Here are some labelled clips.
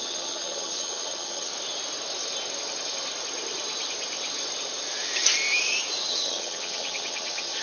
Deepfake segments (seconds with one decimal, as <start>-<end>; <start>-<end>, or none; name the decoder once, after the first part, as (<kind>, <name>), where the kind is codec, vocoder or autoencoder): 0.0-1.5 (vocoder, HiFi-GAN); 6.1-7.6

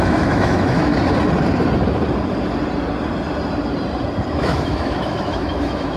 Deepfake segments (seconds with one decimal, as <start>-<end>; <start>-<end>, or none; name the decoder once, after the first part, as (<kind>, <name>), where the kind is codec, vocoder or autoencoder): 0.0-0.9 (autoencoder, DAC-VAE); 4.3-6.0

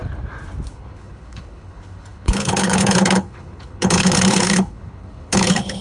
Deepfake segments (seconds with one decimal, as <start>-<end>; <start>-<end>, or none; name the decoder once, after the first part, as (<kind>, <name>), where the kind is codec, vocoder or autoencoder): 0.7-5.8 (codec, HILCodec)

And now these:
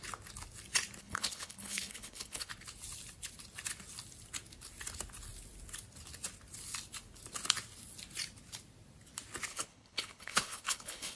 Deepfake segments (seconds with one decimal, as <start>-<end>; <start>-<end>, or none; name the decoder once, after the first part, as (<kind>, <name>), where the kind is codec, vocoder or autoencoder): 1.0-2.5 (codec, HILCodec); 9.5-11.2